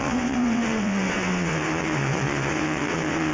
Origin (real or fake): fake